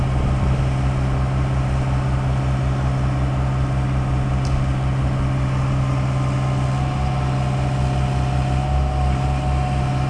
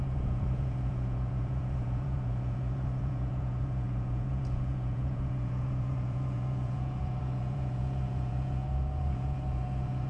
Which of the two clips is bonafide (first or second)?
first